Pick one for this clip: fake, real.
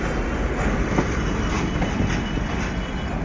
real